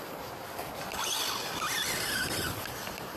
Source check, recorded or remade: recorded